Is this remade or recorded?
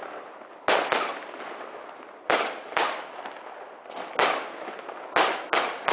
recorded